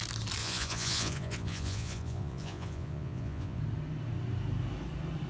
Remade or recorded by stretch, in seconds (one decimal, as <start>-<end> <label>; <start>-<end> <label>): 0.0-0.4 recorded; 0.4-3.6 remade; 3.6-5.3 recorded